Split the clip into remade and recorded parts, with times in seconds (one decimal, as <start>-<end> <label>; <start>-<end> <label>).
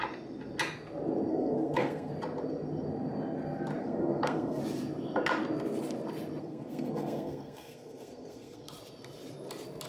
0.0-1.3 recorded; 1.3-2.1 remade; 2.1-3.8 recorded; 3.8-4.6 remade; 4.6-6.4 recorded; 6.4-8.7 remade; 8.7-9.9 recorded